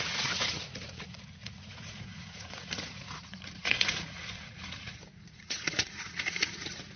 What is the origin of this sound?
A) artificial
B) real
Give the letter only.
A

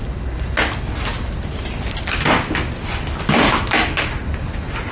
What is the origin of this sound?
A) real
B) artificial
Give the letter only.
A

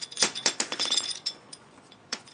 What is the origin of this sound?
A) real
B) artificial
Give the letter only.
B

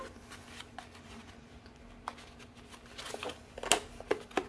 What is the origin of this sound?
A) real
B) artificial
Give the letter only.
A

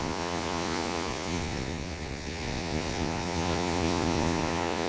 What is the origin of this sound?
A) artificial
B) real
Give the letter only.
A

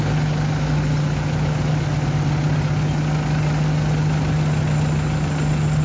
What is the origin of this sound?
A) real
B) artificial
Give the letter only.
A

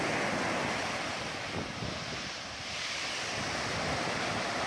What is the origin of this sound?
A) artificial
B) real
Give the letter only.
B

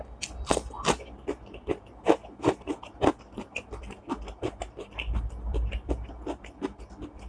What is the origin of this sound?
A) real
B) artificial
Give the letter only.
A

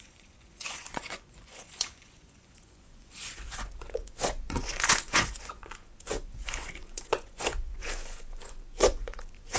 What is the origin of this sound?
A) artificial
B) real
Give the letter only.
A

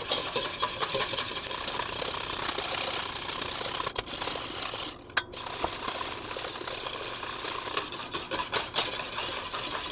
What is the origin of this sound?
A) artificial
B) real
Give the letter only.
B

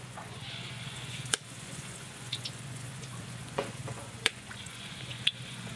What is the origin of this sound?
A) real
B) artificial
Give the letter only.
B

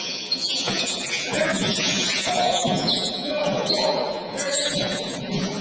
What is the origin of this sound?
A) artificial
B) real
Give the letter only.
A